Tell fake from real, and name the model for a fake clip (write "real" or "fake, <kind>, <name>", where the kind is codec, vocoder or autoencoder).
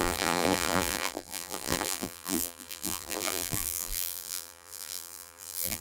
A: fake, vocoder, BigVGAN v2